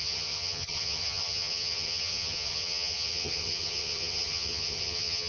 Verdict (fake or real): fake